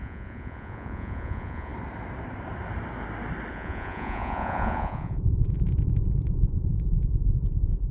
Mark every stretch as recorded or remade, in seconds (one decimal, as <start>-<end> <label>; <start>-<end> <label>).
0.0-1.7 remade; 1.7-3.5 recorded; 3.5-7.9 remade